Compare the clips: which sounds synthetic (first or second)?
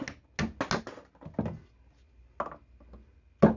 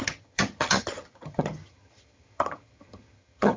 second